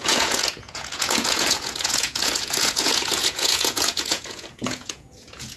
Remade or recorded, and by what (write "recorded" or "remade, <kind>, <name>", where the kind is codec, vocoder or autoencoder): remade, vocoder, Vocos